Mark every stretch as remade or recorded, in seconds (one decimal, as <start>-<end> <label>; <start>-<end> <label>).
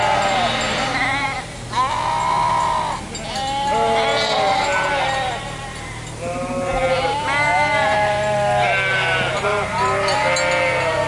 0.0-11.1 recorded